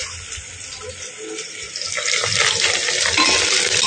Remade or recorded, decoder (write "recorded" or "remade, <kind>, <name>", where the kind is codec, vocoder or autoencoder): recorded